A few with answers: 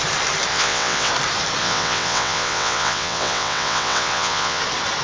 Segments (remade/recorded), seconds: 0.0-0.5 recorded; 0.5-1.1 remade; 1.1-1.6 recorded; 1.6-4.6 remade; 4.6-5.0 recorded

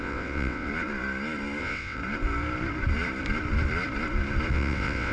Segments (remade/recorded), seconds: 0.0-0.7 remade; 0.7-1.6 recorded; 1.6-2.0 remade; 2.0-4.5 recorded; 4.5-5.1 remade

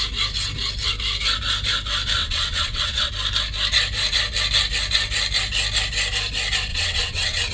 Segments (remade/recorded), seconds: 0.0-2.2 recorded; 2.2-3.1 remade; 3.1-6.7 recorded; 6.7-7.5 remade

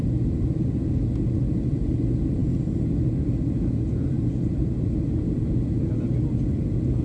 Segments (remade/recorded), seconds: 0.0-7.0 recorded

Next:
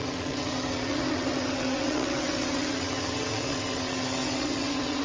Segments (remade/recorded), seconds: 0.0-5.0 remade